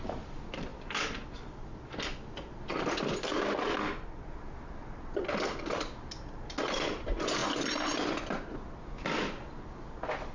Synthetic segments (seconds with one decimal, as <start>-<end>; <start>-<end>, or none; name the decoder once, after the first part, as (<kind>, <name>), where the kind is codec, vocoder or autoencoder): none